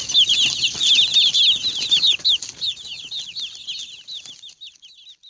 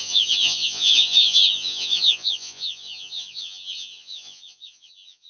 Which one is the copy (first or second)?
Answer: second